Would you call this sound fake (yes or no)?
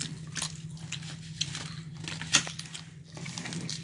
no